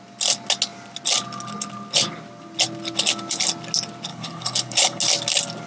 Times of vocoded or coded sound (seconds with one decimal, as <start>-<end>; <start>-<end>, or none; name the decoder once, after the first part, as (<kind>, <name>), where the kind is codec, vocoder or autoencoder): 4.1-5.0 (codec, HILCodec)